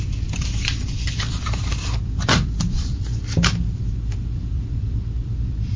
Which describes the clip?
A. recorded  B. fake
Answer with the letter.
B